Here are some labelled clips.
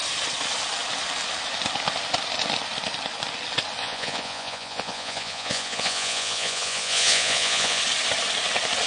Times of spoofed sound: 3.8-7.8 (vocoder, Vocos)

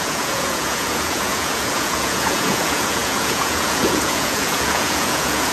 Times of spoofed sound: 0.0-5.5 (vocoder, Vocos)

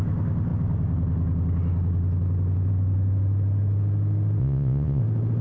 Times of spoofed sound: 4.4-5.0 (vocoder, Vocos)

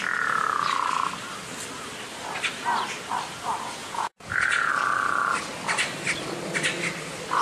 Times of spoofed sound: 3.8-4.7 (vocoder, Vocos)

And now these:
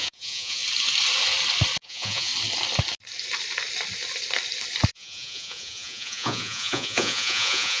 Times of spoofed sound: 0.0-0.6 (vocoder, Vocos); 1.8-2.3; 4.9-7.8

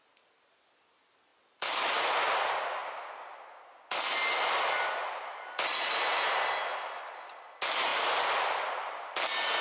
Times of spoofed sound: none

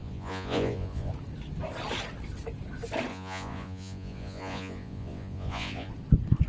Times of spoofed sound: 0.0-1.1 (vocoder, Vocos); 3.1-5.9

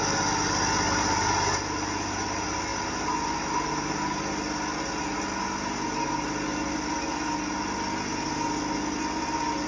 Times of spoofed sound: none